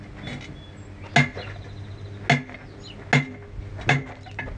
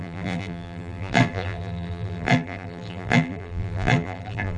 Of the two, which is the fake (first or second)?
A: second